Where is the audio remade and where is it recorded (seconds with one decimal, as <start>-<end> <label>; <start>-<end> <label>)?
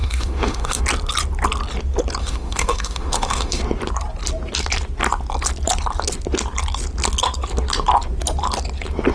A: 0.0-0.8 remade; 0.8-2.2 recorded; 2.2-3.6 remade; 3.6-9.1 recorded